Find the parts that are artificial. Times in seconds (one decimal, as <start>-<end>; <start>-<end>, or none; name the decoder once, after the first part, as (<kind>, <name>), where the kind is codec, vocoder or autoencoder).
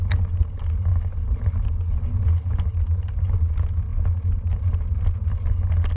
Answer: none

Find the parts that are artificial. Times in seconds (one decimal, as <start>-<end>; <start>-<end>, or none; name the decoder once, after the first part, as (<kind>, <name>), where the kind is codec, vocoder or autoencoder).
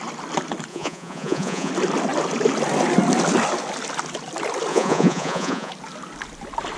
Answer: 0.7-1.7 (vocoder, Vocos); 4.7-5.7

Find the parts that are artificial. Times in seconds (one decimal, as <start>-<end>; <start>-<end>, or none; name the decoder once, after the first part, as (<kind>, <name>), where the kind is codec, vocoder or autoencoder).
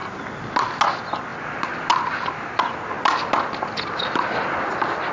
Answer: none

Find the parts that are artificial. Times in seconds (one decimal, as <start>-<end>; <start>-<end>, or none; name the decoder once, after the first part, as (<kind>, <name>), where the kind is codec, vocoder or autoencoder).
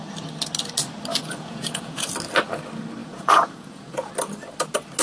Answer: 1.1-2.1 (vocoder, Vocos); 3.0-4.1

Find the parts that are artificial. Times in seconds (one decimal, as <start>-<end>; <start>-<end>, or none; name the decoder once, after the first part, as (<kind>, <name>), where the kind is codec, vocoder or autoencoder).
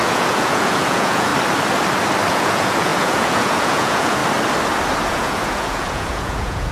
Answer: 0.0-1.3 (vocoder, Vocos); 2.3-4.2; 5.1-6.7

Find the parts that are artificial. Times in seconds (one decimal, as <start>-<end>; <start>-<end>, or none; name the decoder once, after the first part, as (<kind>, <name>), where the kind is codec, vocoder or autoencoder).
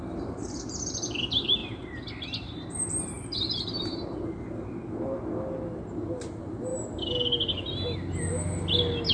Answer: none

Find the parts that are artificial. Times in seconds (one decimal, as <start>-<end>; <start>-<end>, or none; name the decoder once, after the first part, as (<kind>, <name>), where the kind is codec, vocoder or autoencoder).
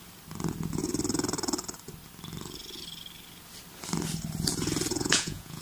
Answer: 4.9-5.6 (vocoder, Vocos)